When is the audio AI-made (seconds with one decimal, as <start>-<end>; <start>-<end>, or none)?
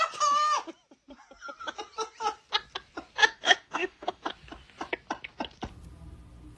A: 3.2-4.3